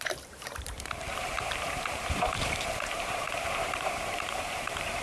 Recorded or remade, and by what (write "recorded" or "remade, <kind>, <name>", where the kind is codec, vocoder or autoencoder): remade, vocoder, BigVGAN v2